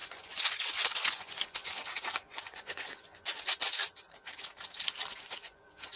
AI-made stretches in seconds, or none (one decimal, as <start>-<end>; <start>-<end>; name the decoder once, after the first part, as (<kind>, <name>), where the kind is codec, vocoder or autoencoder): 0.0-3.6 (vocoder, Vocos); 5.2-6.0